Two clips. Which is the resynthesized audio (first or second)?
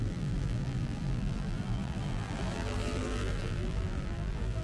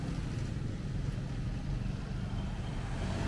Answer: first